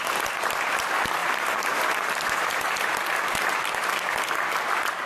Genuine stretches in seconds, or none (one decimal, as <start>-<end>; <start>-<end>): 0.0-1.2; 2.6-5.1